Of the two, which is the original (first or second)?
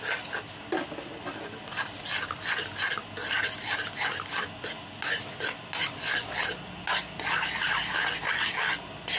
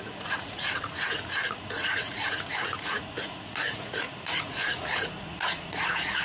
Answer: first